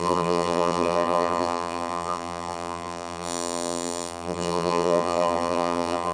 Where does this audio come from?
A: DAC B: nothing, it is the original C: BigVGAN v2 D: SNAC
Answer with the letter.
C